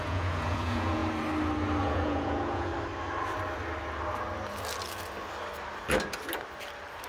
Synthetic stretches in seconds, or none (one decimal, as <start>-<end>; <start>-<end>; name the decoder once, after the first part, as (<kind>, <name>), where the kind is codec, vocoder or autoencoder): 0.0-1.0 (vocoder, Vocos); 1.8-2.7